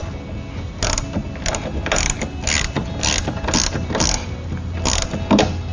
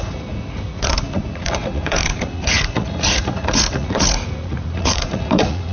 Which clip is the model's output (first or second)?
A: second